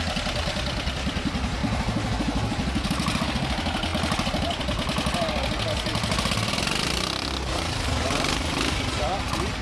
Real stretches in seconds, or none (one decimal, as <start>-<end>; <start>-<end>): 0.0-9.6